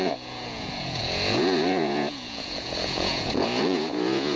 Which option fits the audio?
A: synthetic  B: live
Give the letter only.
A